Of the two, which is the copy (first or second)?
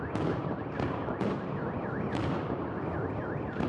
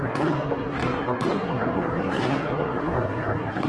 second